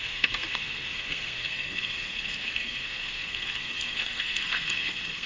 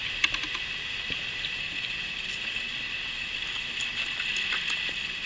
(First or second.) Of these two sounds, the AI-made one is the first